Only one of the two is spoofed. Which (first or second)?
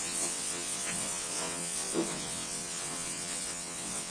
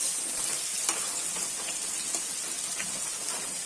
first